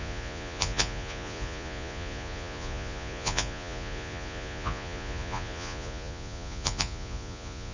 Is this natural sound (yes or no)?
no